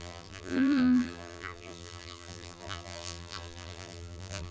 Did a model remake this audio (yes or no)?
yes